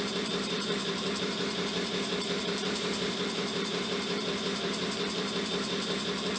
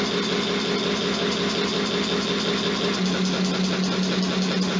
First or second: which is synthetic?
first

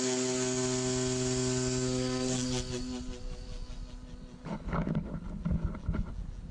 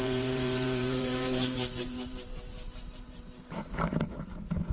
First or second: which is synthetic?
second